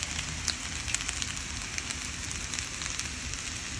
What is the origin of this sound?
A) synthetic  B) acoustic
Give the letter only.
B